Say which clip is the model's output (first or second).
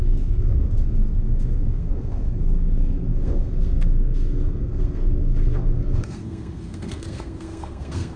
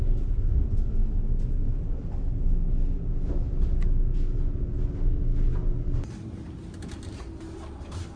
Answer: first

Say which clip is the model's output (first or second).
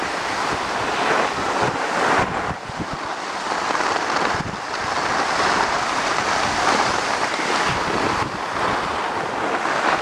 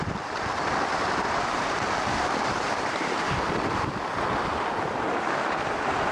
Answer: second